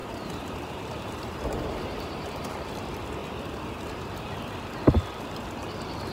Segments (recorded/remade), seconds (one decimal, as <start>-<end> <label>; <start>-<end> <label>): 0.0-2.5 remade; 2.5-6.1 recorded